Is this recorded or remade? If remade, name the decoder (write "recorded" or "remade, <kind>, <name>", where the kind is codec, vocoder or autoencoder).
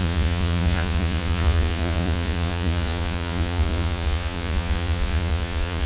remade, vocoder, Vocos